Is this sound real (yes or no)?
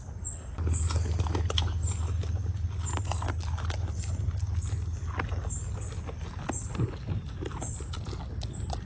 yes